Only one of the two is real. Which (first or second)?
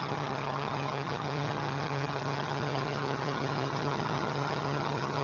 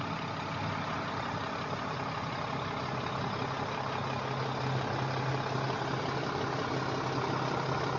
second